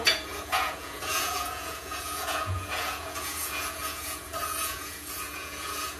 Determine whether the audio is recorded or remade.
remade